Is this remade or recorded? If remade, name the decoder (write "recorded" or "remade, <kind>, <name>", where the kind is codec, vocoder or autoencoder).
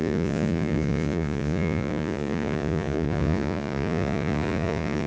remade, vocoder, Vocos